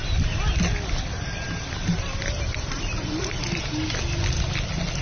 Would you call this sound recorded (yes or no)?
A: yes